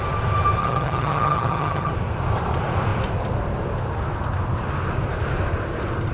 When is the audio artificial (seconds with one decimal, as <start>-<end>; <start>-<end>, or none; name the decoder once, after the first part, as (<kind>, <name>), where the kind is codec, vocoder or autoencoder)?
0.6-1.9 (vocoder, HiFi-GAN)